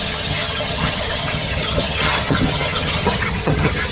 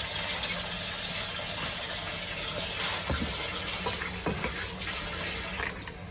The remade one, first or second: first